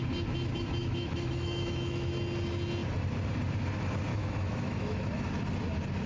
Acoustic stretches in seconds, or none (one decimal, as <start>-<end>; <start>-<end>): 0.0-0.8; 2.1-4.1; 5.3-6.1